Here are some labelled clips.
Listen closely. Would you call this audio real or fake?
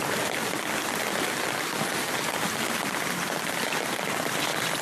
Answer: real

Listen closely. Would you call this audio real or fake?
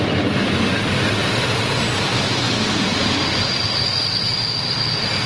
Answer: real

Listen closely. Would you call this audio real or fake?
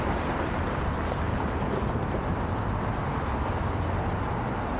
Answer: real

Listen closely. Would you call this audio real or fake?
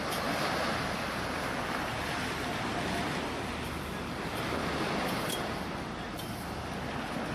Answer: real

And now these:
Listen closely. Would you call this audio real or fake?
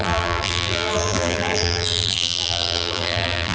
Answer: fake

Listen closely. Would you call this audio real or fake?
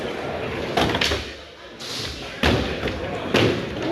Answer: real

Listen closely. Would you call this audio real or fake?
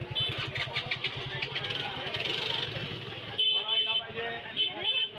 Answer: real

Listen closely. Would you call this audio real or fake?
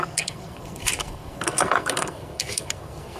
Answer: fake